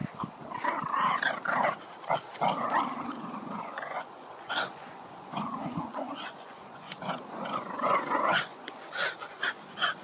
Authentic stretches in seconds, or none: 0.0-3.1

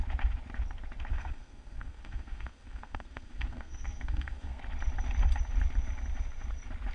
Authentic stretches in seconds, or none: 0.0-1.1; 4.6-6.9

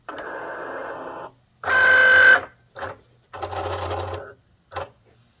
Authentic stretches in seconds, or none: 0.0-5.4

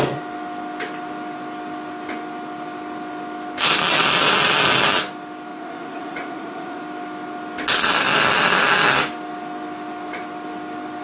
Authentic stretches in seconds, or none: 0.0-5.5; 6.8-11.0

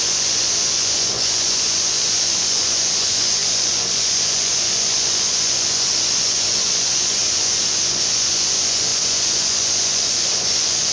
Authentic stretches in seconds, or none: none

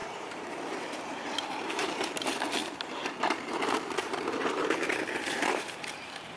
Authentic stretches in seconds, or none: none

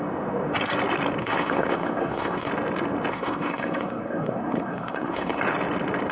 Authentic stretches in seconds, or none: 0.0-1.2; 2.5-3.1; 5.4-6.1